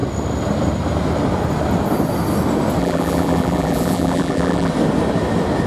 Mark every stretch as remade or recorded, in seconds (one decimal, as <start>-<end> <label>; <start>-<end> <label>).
0.0-2.8 recorded; 2.8-4.7 remade; 4.7-5.7 recorded